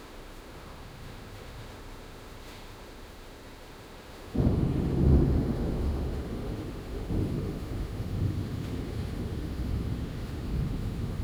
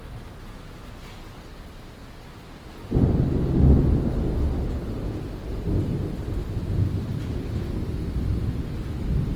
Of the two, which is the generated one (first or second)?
first